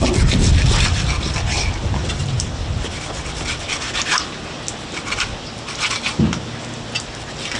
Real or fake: real